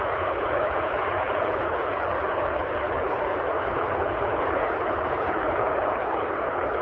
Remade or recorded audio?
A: remade